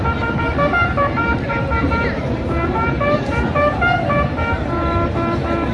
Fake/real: fake